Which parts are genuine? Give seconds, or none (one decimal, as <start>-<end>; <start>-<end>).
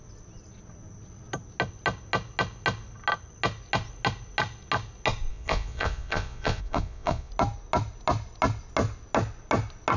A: 0.0-5.3; 7.3-10.0